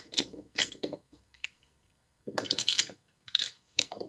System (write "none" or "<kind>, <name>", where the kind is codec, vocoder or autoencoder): codec, SNAC